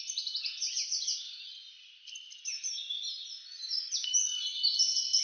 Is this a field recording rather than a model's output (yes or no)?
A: no